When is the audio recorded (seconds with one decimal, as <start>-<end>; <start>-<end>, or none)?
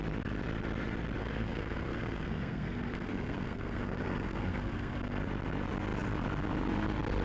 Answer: 0.0-1.2; 5.2-7.2